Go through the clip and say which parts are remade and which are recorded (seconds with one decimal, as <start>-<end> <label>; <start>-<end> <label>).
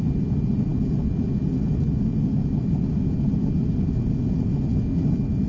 0.0-5.5 recorded